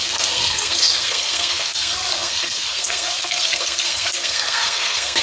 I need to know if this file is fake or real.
fake